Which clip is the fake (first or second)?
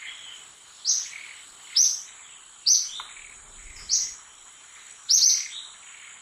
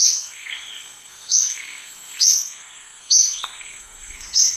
second